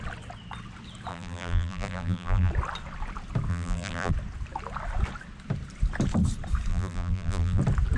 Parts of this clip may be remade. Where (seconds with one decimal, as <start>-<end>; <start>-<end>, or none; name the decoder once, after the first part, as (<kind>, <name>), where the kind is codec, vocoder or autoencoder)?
1.1-2.5 (vocoder, BigVGAN v2); 3.5-4.1; 6.7-7.6